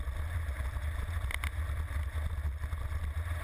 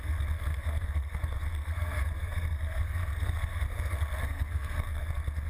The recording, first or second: first